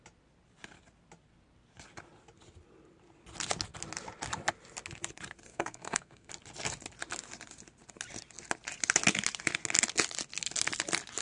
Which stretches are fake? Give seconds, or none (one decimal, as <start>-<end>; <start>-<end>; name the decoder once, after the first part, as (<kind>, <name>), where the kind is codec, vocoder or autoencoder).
5.5-6.3 (codec, SNAC)